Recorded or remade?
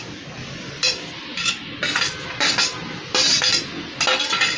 recorded